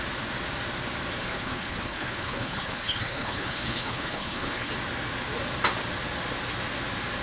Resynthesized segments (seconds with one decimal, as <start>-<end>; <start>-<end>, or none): 1.2-4.7